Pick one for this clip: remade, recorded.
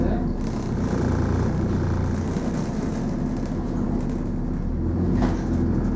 recorded